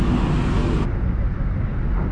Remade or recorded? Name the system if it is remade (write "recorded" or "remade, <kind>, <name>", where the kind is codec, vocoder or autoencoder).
recorded